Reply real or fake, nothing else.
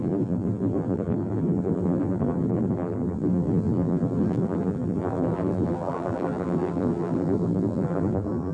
fake